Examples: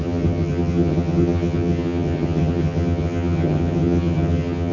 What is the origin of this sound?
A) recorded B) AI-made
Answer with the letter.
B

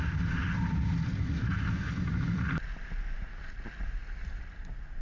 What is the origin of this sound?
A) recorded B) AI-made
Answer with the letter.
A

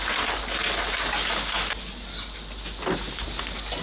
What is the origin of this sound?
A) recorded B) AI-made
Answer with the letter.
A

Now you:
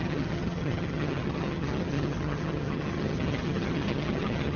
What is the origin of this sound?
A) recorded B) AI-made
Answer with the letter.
B